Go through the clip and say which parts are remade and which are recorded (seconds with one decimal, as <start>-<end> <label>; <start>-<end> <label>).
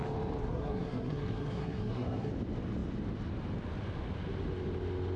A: 0.0-0.4 recorded; 0.4-2.3 remade; 2.3-5.2 recorded